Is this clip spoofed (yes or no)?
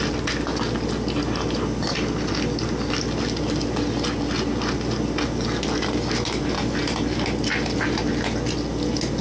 no